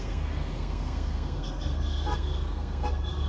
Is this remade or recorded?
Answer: remade